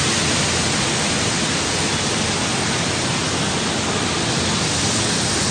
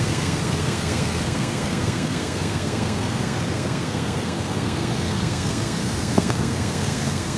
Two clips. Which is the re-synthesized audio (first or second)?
second